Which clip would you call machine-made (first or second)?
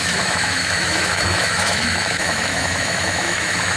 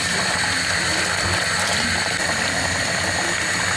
first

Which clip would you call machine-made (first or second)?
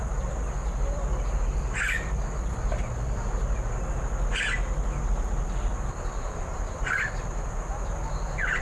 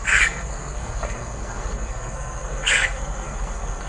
second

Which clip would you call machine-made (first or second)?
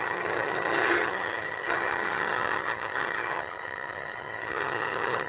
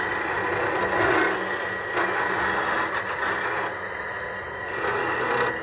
first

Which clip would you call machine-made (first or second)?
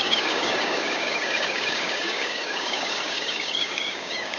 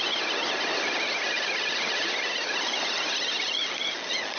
first